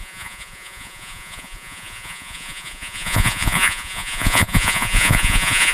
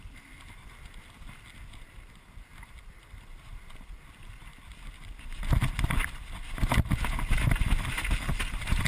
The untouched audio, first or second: second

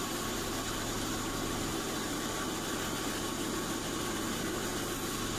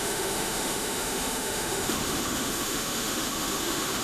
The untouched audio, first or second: first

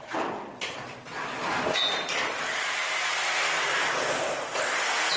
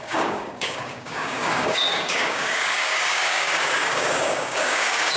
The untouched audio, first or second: first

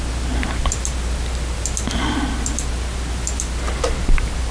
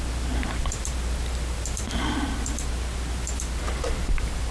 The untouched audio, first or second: first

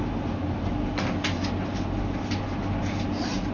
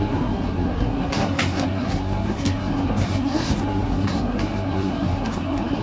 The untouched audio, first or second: first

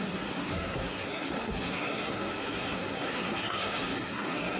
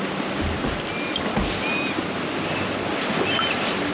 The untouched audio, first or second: second